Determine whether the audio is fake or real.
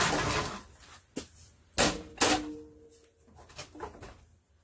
real